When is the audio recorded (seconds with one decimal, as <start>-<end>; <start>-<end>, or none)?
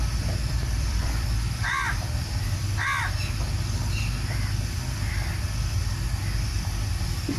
2.6-7.0